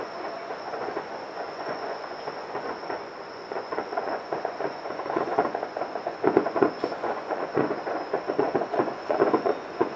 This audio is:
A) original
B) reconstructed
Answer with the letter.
B